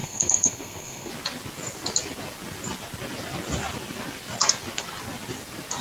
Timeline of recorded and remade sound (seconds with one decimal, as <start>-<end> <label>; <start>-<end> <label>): 0.0-1.1 remade; 1.1-5.8 recorded